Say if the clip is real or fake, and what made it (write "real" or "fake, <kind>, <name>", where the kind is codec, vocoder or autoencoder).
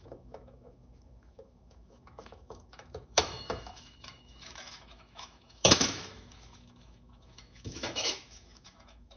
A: fake, autoencoder, DAC-VAE